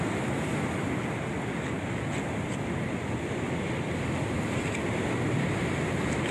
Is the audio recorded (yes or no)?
yes